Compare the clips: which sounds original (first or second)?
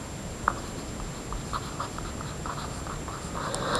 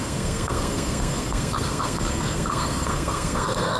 first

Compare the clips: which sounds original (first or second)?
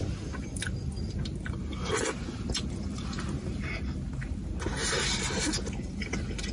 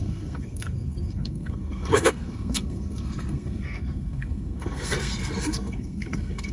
first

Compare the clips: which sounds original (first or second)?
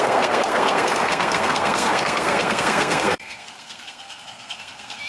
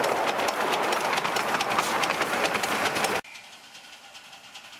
second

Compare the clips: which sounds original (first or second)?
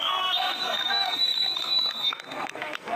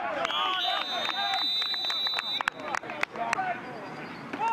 second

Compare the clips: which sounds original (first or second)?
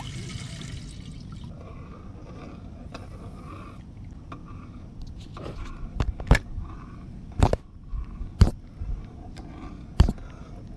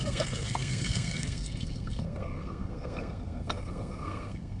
first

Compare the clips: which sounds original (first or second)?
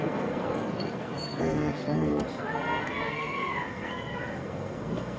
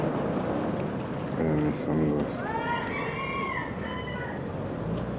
second